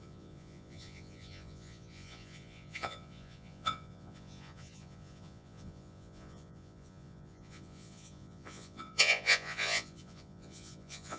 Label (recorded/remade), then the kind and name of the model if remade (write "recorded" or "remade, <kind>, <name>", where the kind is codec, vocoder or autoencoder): remade, vocoder, Vocos